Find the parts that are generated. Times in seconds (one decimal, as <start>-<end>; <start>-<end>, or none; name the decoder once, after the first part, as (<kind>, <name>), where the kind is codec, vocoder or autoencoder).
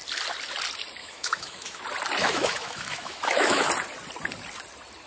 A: 1.0-1.8 (autoencoder, DAC-VAE); 2.2-3.7